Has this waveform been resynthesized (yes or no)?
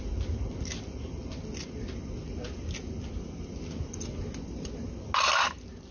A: no